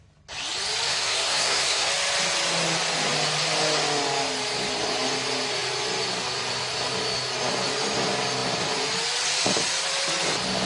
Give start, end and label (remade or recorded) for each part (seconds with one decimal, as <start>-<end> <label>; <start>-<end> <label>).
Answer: 0.0-0.9 recorded; 0.9-1.9 remade; 1.9-10.7 recorded